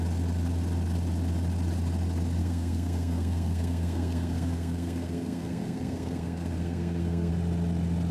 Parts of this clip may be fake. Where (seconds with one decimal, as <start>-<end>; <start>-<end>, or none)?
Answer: 2.4-7.3